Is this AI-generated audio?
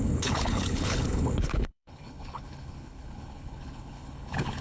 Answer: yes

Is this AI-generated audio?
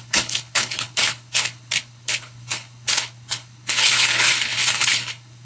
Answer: yes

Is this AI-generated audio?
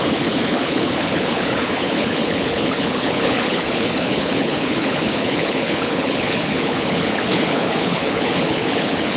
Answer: yes